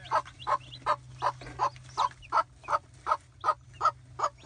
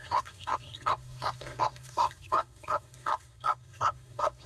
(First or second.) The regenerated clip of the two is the second